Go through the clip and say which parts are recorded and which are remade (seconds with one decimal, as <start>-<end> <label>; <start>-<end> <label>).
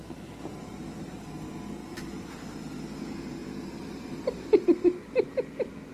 0.0-5.9 recorded